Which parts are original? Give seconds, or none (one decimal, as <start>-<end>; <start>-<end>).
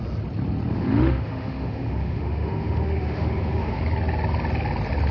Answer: 0.0-0.7; 3.8-5.1